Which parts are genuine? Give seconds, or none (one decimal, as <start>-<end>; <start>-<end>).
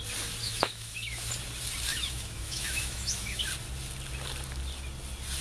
0.0-0.4; 1.3-1.9; 3.4-5.4